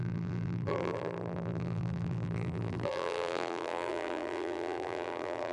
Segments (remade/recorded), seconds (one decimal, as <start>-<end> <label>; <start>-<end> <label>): 0.0-5.5 remade